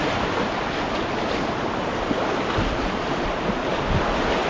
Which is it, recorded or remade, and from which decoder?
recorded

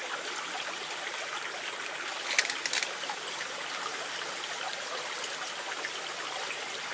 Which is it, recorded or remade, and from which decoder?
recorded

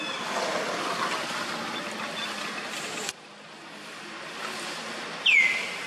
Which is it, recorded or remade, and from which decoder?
recorded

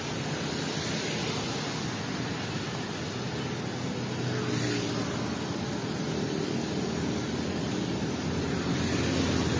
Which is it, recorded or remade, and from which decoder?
recorded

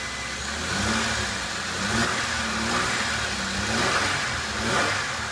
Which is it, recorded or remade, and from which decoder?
recorded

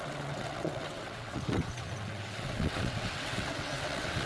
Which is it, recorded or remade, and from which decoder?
remade, vocoder, WaveNeXt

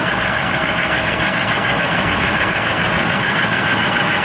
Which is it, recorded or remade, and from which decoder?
remade, codec, SNAC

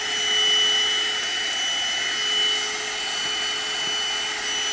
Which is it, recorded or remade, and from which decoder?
recorded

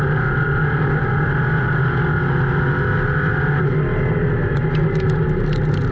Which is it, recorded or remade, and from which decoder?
recorded